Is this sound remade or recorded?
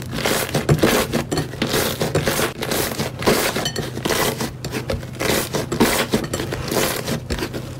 recorded